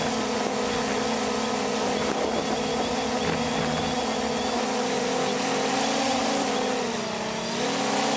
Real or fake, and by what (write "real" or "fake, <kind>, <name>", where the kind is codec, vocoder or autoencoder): real